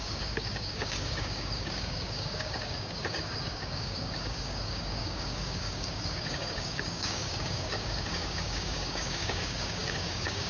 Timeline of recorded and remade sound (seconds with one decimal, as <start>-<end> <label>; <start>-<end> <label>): 0.0-10.5 remade

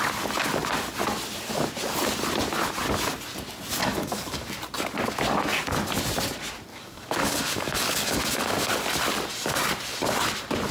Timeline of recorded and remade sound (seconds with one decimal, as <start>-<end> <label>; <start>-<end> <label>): 0.0-3.8 recorded; 3.8-4.6 remade; 4.6-6.7 recorded; 6.7-8.7 remade; 8.7-10.7 recorded